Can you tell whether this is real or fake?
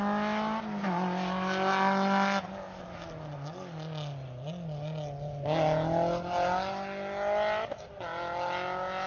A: real